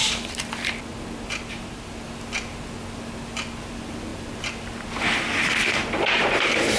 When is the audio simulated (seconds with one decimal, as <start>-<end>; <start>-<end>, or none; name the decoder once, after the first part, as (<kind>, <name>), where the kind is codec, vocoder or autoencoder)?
none